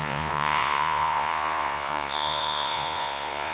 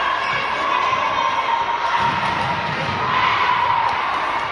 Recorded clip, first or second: second